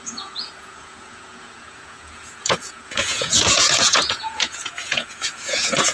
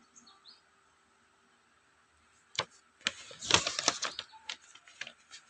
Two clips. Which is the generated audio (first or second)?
first